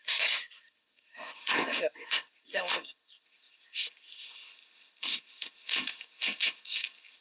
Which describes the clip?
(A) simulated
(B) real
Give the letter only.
A